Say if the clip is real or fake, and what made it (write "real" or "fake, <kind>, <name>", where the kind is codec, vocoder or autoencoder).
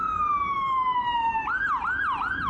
fake, vocoder, BigVGAN v2